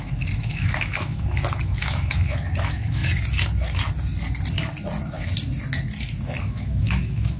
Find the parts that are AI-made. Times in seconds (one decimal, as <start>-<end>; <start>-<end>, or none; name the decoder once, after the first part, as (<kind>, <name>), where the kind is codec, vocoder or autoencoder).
0.0-3.0 (autoencoder, DAC-VAE); 6.4-7.4